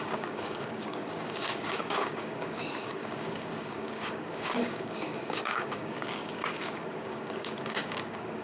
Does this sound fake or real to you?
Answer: fake